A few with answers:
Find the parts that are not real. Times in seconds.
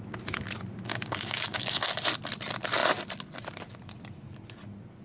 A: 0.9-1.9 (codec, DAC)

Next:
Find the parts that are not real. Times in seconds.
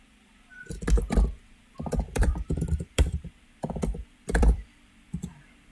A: 0.0-0.5 (vocoder, BigVGAN v2); 1.5-5.7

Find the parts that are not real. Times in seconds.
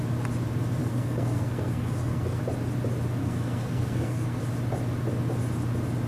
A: 0.8-2.4 (codec, SNAC); 3.2-4.4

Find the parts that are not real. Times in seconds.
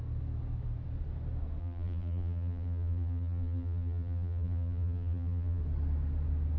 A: 1.6-5.6 (vocoder, BigVGAN v2)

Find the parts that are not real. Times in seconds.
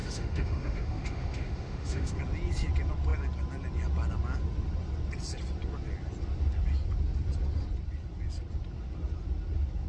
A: 0.0-2.2 (autoencoder, DAC-VAE)